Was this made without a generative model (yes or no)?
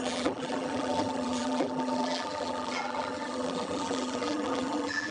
no